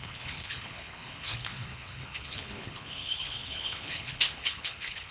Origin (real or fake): fake